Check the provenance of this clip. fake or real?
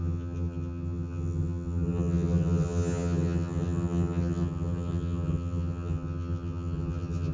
fake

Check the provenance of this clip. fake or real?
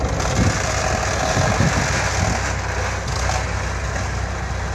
real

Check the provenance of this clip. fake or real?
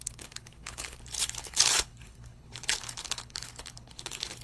fake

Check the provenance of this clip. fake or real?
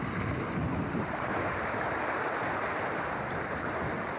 real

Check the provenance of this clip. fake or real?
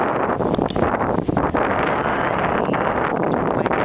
real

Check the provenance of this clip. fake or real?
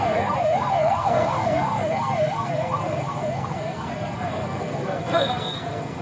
fake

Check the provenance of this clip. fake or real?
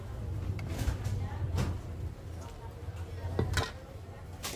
real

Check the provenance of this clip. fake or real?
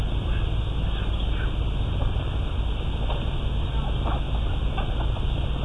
real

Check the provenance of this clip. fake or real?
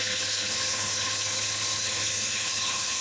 fake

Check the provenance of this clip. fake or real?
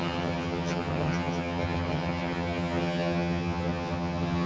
fake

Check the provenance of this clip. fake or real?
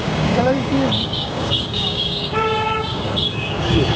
fake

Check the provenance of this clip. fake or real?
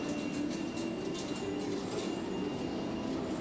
real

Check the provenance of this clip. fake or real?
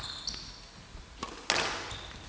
real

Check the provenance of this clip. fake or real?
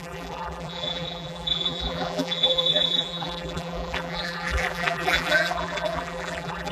fake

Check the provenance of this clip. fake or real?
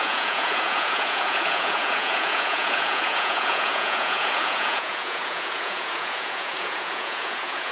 fake